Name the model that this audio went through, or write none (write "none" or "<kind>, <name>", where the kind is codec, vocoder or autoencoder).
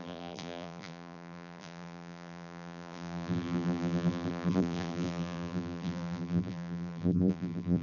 vocoder, BigVGAN v2